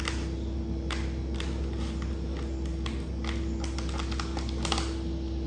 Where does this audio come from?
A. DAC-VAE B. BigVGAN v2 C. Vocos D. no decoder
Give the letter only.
D